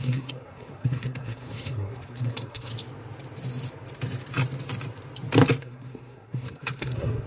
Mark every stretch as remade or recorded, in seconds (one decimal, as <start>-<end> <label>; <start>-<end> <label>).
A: 0.0-2.7 remade; 2.7-5.6 recorded; 5.6-7.3 remade